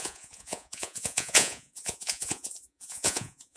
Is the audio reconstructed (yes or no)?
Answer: yes